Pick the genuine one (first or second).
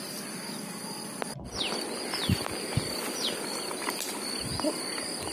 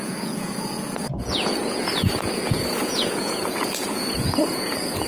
first